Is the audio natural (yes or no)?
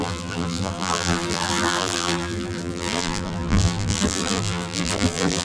no